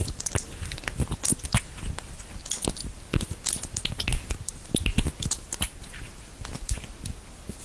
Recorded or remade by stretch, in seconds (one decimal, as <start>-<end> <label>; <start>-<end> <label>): 0.0-7.6 recorded

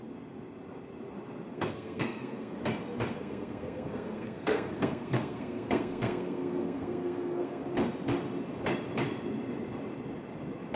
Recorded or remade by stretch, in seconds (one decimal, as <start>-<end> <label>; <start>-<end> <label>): 0.0-1.5 recorded; 1.5-2.6 remade; 2.6-3.1 recorded; 3.1-7.6 remade; 7.6-10.8 recorded

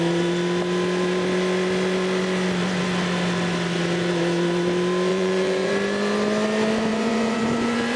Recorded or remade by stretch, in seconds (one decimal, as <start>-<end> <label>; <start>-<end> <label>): 0.0-5.1 recorded; 5.1-5.7 remade; 5.7-6.9 recorded; 6.9-8.0 remade

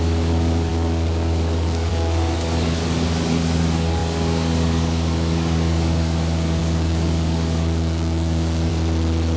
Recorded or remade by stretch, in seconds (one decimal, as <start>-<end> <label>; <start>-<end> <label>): 0.0-8.7 remade; 8.7-9.4 recorded

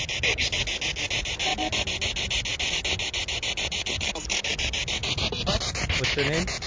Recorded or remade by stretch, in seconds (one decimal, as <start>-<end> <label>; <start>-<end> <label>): 0.0-5.0 recorded; 5.0-5.6 remade; 5.6-6.7 recorded

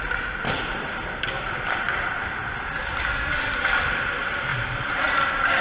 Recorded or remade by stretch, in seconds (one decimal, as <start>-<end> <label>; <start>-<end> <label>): 0.0-4.5 remade; 4.5-5.6 recorded

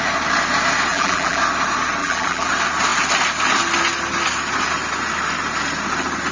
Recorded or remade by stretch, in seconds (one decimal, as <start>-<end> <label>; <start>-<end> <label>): 0.0-0.9 recorded; 0.9-1.4 remade; 1.4-2.0 recorded; 2.0-2.5 remade; 2.5-6.3 recorded

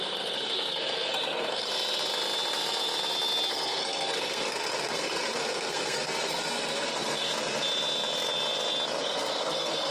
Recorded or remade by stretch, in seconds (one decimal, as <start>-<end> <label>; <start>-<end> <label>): 0.0-1.7 remade; 1.7-3.5 recorded; 3.5-7.3 remade; 7.3-9.0 recorded; 9.0-9.9 remade